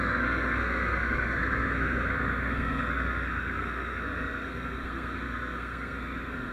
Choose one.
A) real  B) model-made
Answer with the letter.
B